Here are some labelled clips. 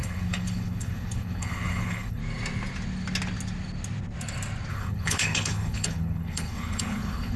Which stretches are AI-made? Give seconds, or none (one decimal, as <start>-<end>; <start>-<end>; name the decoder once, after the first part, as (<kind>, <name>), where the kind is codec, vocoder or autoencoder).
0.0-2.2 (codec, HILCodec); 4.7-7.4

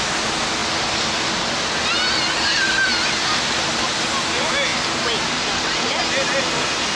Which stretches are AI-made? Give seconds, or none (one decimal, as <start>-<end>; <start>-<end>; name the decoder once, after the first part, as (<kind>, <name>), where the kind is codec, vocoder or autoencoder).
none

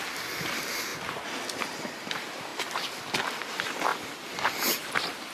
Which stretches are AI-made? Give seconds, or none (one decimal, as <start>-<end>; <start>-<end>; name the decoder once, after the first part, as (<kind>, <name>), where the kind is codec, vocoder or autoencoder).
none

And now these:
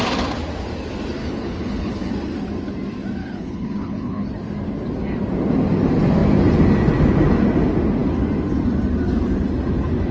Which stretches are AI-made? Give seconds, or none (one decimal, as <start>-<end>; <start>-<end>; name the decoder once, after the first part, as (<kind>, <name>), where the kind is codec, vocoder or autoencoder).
1.2-2.1 (codec, HILCodec); 3.2-4.3